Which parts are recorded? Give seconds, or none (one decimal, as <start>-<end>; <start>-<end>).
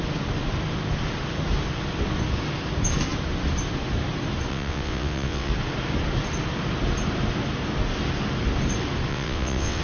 0.0-4.5; 5.5-9.1